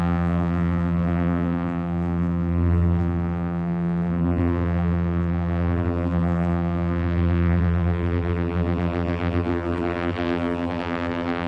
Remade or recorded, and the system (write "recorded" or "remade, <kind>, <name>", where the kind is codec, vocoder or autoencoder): remade, vocoder, BigVGAN v2